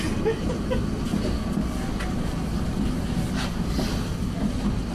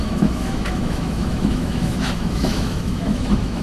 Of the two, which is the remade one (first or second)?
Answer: second